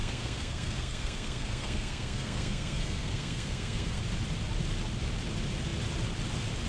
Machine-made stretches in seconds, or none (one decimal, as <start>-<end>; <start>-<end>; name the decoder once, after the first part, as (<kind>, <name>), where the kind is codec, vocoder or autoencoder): 0.0-4.0 (codec, SNAC)